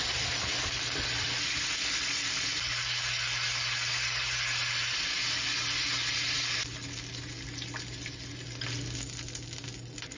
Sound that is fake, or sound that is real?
real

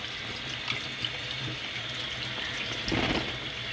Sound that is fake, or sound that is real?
real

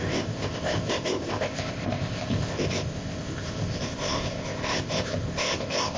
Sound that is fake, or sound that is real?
fake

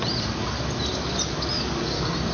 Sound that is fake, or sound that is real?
real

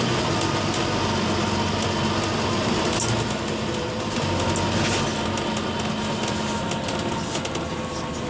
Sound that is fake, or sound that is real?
real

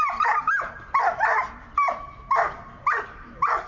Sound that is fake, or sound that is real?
real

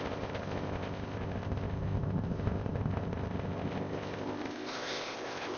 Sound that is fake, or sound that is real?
fake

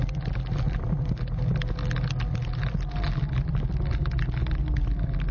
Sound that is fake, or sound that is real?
real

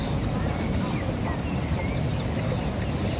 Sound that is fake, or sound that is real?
real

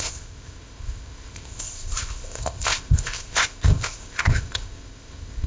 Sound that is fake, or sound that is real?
fake